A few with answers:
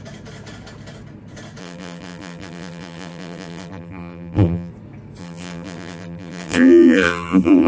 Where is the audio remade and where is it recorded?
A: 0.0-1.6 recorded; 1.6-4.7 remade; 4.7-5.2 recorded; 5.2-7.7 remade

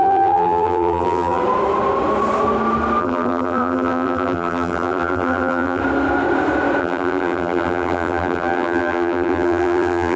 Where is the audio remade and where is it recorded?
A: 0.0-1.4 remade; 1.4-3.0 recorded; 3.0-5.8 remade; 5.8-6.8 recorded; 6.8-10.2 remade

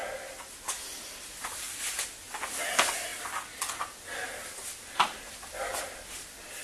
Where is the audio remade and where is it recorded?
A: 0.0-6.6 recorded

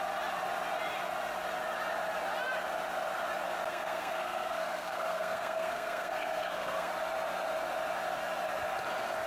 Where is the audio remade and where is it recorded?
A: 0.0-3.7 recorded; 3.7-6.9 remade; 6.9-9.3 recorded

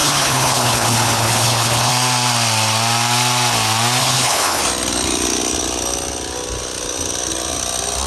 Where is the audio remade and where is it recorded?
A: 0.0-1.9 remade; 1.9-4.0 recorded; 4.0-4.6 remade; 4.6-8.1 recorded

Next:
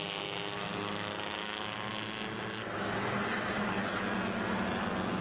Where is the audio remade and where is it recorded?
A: 0.0-3.3 recorded; 3.3-4.0 remade; 4.0-5.2 recorded

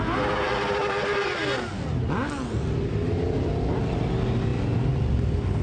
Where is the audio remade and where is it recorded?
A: 0.0-5.6 recorded

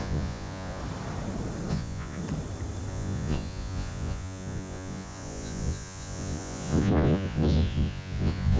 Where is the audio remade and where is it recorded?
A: 0.0-0.8 remade; 0.8-1.7 recorded; 1.7-2.2 remade; 2.2-2.9 recorded; 2.9-8.6 remade